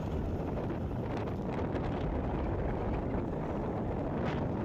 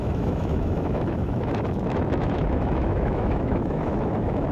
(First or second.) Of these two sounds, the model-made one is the second